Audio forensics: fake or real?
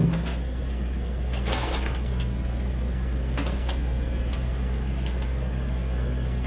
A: fake